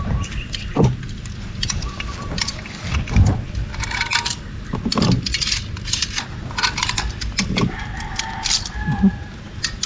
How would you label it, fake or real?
real